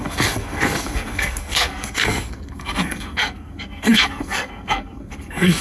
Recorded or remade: remade